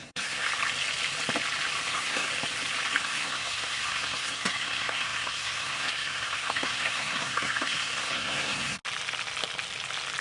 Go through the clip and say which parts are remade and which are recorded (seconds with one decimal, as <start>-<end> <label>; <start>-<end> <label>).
0.0-0.5 remade; 0.5-1.9 recorded; 1.9-2.3 remade; 2.3-3.0 recorded; 3.0-8.8 remade; 8.8-10.2 recorded